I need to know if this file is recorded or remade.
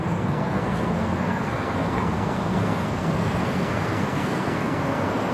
remade